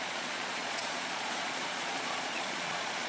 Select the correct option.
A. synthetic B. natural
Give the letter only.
A